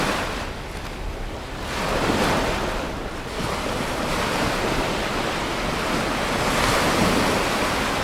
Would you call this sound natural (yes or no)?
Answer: yes